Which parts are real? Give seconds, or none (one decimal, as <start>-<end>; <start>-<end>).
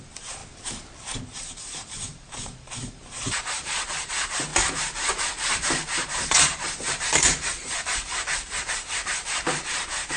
0.4-1.2